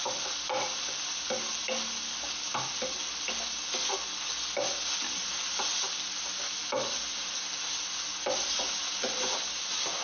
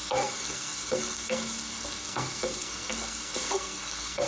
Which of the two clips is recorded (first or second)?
first